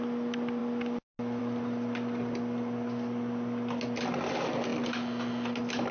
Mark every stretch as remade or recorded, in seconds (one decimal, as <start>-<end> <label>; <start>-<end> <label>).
0.0-5.9 recorded